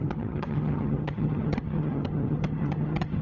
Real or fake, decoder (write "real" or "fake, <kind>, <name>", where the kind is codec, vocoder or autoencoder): fake, vocoder, HiFi-GAN